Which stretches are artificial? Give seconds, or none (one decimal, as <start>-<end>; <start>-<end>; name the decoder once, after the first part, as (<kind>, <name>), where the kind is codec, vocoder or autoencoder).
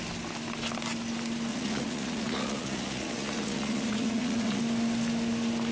1.5-4.6 (vocoder, Vocos)